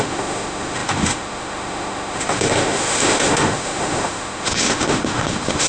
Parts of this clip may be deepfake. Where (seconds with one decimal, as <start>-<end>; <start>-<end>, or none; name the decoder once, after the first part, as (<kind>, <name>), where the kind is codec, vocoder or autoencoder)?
0.0-5.7 (autoencoder, DAC-VAE)